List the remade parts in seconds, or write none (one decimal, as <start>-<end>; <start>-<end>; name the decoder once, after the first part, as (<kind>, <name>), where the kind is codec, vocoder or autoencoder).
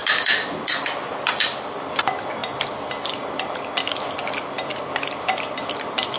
none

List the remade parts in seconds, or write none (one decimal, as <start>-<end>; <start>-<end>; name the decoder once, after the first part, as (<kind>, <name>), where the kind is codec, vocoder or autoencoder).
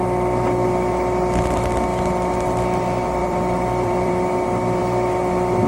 3.2-4.1 (vocoder, BigVGAN v2)